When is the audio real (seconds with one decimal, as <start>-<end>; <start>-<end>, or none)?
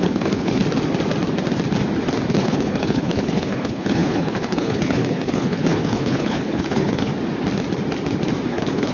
0.6-2.3; 7.1-8.5